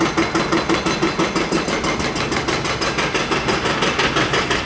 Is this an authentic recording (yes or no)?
yes